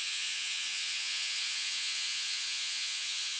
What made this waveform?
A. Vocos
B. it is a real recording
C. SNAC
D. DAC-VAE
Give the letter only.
A